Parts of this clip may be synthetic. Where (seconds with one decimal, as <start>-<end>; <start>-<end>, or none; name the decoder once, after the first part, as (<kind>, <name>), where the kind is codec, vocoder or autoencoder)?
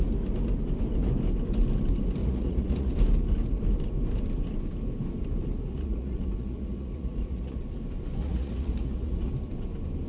2.2-2.9 (vocoder, Vocos); 5.7-7.6; 8.2-9.3